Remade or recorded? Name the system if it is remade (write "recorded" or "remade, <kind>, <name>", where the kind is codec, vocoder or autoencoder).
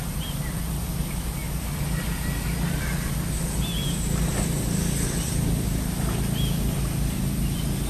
recorded